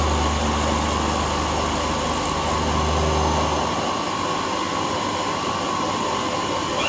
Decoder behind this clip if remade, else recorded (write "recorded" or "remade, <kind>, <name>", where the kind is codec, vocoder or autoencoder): recorded